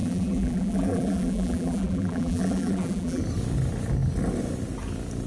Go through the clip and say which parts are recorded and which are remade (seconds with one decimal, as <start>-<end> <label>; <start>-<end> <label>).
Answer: 0.0-3.2 remade; 3.2-5.3 recorded